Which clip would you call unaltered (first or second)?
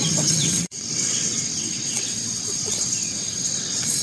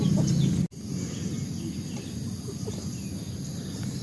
second